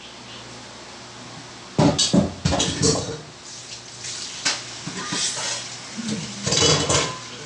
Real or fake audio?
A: real